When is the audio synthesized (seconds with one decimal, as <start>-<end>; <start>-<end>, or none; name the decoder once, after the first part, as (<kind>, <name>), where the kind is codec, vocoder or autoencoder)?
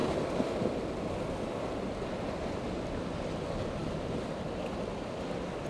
none